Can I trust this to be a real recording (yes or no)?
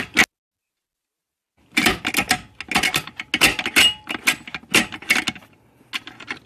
yes